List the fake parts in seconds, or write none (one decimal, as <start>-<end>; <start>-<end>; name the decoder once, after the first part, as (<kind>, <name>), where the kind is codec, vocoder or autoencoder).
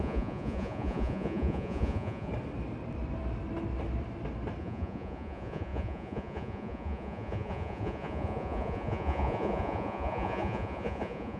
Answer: 0.0-2.3 (vocoder, Vocos); 4.6-11.4